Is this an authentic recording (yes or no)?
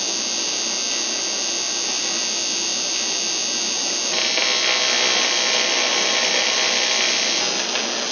yes